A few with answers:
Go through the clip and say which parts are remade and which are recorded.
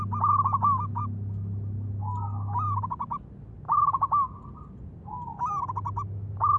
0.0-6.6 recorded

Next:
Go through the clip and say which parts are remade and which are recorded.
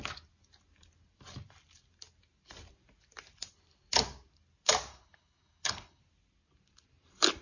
0.0-4.9 recorded; 4.9-6.0 remade; 6.0-7.4 recorded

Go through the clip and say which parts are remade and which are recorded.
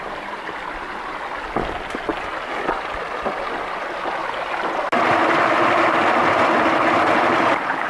0.0-7.9 recorded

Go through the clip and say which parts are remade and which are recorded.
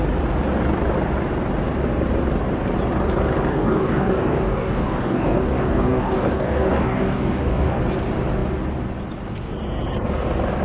0.0-3.5 recorded; 3.5-7.8 remade; 7.8-10.6 recorded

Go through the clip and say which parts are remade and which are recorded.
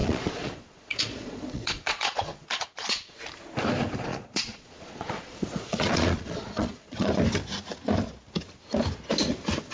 0.0-3.2 remade; 3.2-4.1 recorded; 4.1-7.1 remade; 7.1-9.7 recorded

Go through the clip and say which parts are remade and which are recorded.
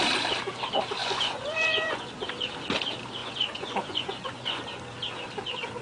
0.0-1.0 recorded; 1.0-2.1 remade; 2.1-3.2 recorded; 3.2-4.6 remade; 4.6-5.8 recorded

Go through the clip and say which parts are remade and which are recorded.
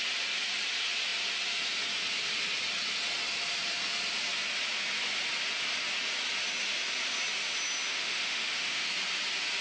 0.0-7.9 recorded; 7.9-8.9 remade; 8.9-9.6 recorded